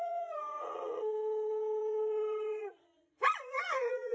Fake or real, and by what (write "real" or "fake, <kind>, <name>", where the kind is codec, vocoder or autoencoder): fake, vocoder, Vocos